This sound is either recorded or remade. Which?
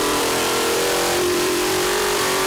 remade